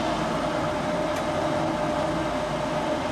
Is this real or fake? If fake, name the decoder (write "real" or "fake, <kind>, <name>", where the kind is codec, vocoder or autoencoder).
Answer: real